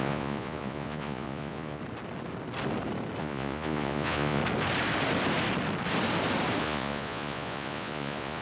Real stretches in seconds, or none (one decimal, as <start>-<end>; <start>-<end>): 1.8-3.2; 4.4-6.6